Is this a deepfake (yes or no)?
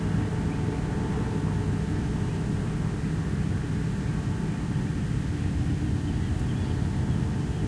no